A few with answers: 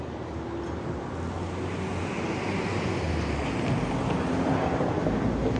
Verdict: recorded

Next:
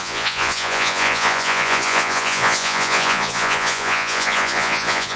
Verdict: remade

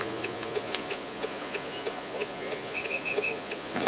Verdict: remade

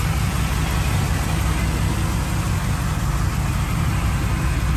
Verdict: recorded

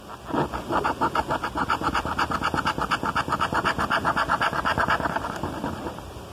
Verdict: recorded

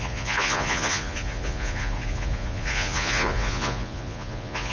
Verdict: remade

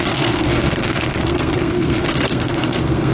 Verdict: remade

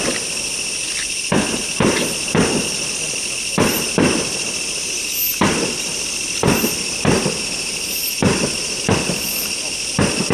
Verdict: recorded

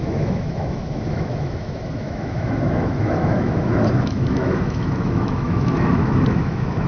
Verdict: remade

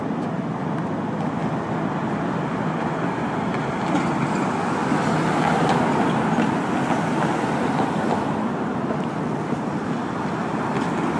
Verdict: recorded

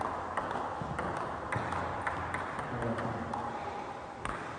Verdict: recorded